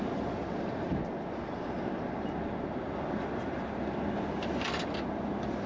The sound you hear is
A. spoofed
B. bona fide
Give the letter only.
B